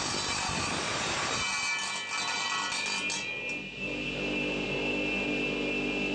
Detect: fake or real real